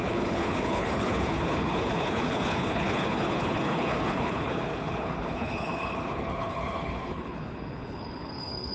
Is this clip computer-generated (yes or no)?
yes